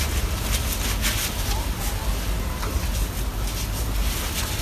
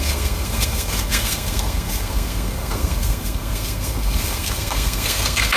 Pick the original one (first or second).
first